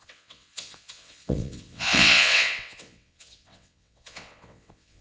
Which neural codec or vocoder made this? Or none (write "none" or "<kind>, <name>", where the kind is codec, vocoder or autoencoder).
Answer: vocoder, WaveNeXt